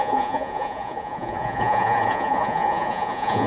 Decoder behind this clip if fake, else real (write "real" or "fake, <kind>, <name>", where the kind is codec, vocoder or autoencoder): fake, vocoder, Vocos